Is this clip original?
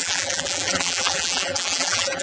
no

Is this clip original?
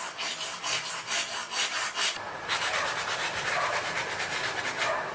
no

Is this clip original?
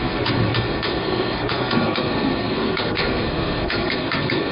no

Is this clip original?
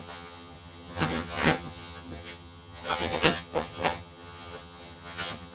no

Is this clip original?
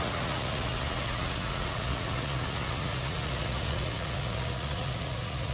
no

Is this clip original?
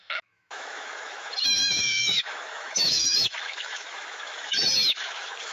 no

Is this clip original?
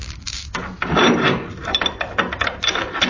yes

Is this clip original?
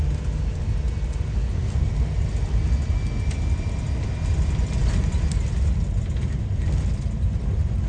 yes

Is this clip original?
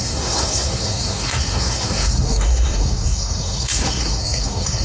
no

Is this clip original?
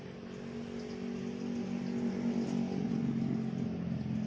yes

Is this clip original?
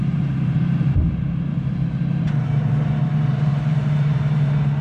no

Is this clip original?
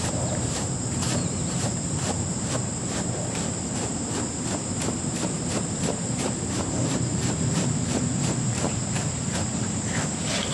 no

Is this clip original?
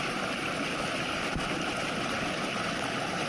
yes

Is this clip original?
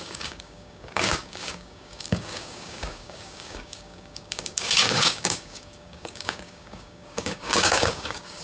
no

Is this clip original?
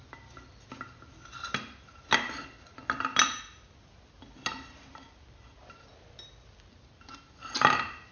yes